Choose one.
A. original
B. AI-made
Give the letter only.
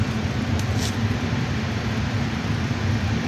A